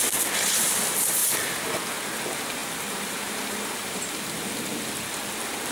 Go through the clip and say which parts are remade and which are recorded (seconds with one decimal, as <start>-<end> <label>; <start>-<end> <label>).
0.0-1.2 recorded; 1.2-1.8 remade; 1.8-2.6 recorded; 2.6-4.0 remade; 4.0-5.7 recorded